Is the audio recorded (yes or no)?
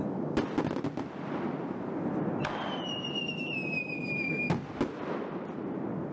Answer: yes